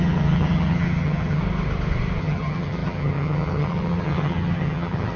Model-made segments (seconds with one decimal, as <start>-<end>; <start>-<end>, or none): 0.0-1.4; 2.2-5.2